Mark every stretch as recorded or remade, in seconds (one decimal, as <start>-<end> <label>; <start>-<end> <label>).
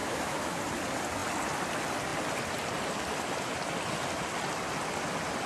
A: 0.0-0.6 remade; 0.6-5.5 recorded